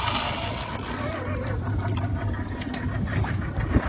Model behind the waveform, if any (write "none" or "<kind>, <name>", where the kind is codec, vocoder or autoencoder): none